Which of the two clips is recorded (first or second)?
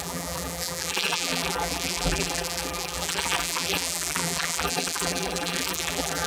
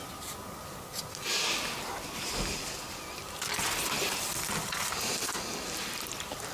second